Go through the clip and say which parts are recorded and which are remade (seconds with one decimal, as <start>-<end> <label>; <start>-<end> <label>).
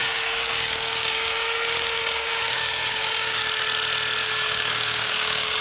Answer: 0.0-3.4 remade; 3.4-4.2 recorded; 4.2-5.6 remade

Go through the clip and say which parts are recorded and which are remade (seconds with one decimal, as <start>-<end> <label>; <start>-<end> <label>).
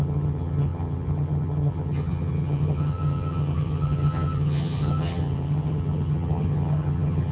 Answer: 0.0-7.3 remade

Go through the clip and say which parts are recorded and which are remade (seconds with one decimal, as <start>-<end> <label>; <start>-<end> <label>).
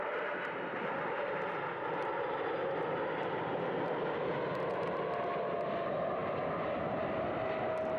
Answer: 0.0-8.0 recorded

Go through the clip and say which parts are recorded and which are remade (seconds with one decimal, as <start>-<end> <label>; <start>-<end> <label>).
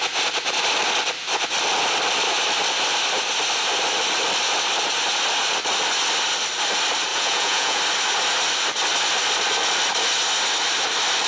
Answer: 0.0-7.1 recorded; 7.1-7.8 remade; 7.8-11.3 recorded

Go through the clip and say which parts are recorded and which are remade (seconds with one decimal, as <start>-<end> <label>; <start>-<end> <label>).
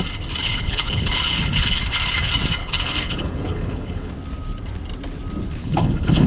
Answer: 0.0-0.4 recorded; 0.4-1.8 remade; 1.8-2.6 recorded; 2.6-4.1 remade; 4.1-5.6 recorded; 5.6-6.3 remade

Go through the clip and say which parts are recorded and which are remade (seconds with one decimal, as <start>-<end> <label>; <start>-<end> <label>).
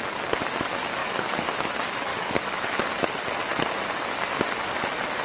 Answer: 0.0-1.0 recorded; 1.0-1.5 remade; 1.5-2.1 recorded; 2.1-2.8 remade; 2.8-5.2 recorded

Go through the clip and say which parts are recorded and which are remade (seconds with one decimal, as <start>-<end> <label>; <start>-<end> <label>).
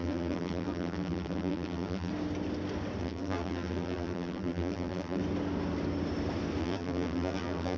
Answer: 0.0-2.1 remade; 2.1-3.0 recorded; 3.0-5.2 remade; 5.2-6.6 recorded; 6.6-7.8 remade